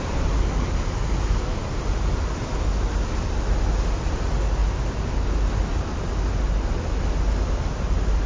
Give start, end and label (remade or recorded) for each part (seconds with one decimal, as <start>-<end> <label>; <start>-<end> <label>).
0.0-8.3 recorded